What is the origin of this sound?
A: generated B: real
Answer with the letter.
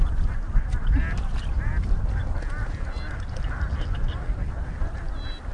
B